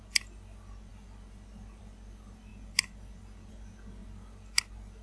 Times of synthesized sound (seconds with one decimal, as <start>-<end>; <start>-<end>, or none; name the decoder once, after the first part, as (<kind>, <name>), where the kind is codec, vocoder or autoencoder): none